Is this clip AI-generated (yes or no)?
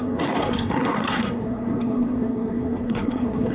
yes